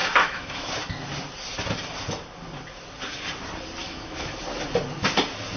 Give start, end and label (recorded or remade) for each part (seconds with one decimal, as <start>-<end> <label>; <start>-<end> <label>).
0.0-0.7 remade; 0.7-3.8 recorded; 3.8-4.4 remade; 4.4-5.6 recorded